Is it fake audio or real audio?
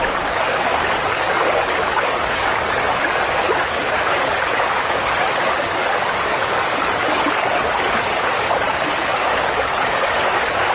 fake